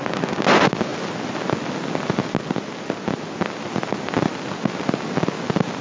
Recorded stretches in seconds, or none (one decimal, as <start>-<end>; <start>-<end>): 0.0-5.8